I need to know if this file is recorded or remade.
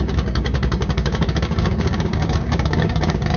remade